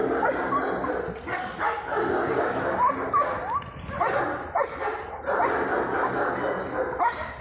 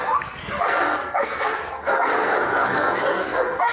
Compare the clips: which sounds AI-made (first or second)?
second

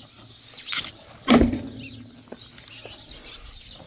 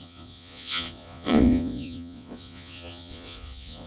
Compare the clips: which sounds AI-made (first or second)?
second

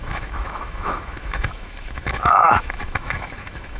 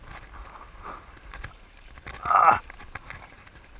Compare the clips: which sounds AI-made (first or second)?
first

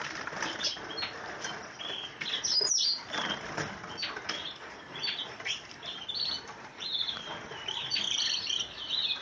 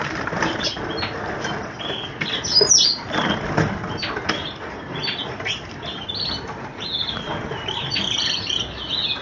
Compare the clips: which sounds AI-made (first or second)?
first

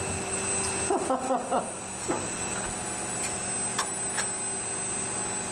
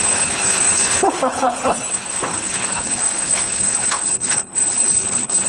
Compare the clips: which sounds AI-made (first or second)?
second